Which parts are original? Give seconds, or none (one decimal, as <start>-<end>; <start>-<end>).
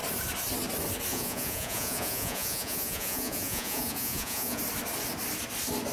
0.0-1.1; 4.6-5.9